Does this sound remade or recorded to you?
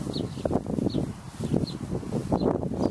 recorded